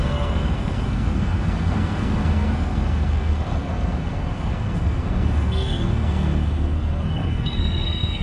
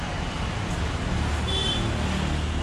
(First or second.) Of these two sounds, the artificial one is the first